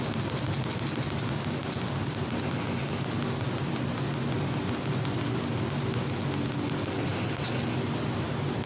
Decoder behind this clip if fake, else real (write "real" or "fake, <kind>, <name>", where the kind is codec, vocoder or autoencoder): real